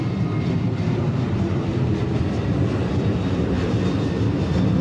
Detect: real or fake fake